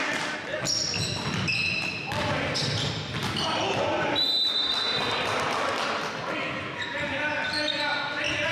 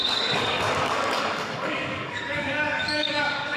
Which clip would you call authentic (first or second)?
first